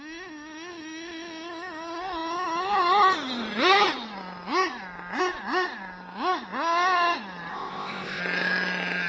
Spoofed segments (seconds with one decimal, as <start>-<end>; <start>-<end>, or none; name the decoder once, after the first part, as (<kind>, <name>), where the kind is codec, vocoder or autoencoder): 7.5-8.2 (codec, ZipCodec)